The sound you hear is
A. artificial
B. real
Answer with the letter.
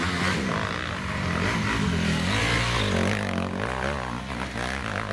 B